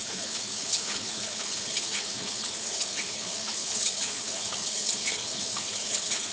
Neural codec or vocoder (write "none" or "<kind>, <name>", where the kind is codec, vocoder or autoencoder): codec, HILCodec